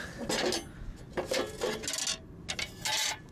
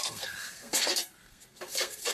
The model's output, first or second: second